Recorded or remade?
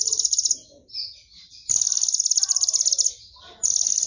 recorded